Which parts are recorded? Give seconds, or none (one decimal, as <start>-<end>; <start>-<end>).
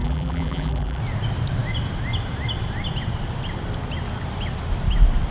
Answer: 1.0-5.3